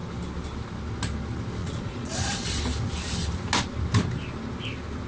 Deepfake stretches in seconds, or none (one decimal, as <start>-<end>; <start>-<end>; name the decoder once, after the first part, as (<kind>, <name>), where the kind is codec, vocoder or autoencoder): 1.6-2.6 (vocoder, Vocos)